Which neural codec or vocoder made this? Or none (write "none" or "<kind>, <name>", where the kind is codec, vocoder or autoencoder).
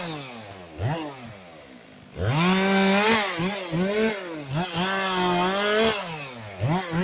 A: none